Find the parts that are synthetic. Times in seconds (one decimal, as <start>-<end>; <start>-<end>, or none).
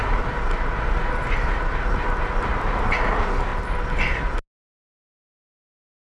none